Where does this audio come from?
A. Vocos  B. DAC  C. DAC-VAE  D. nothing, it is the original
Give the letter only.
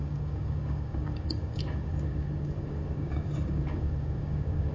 B